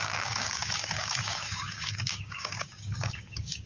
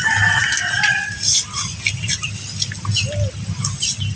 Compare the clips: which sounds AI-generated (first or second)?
first